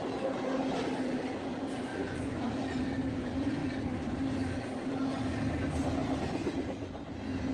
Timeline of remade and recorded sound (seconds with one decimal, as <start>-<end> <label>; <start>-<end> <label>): 0.0-1.9 recorded; 1.9-2.4 remade; 2.4-7.5 recorded